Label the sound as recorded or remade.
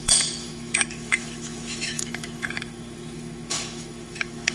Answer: remade